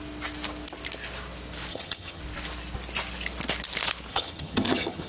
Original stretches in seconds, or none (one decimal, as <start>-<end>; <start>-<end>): 0.0-1.7; 2.2-4.1